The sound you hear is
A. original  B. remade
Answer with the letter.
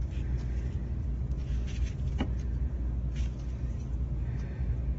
A